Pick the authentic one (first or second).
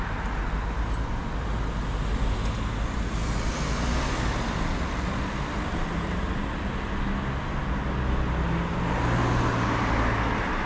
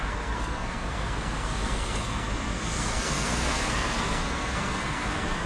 first